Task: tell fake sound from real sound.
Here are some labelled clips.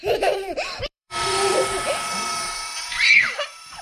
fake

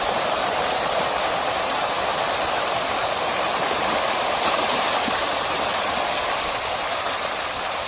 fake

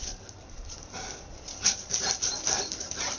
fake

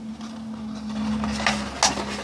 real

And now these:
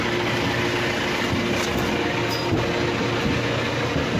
real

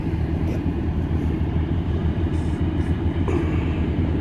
fake